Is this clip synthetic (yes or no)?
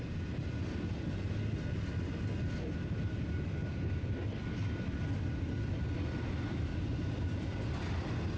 no